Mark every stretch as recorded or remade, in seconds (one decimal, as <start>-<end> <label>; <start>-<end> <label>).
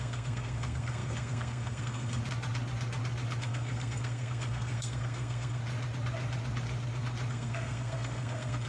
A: 0.0-2.2 remade; 2.2-3.4 recorded; 3.4-5.6 remade; 5.6-7.3 recorded; 7.3-8.7 remade